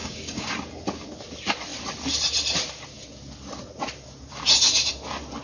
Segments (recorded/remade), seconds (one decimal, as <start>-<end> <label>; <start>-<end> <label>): 0.0-0.5 remade; 0.5-5.4 recorded